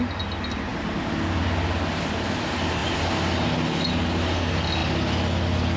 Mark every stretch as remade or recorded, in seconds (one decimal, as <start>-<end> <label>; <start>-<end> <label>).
0.0-5.8 recorded